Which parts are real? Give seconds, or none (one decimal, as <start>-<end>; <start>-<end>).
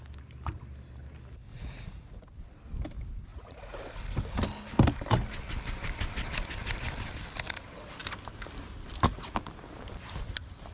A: 0.0-1.5; 2.2-3.3; 3.8-10.7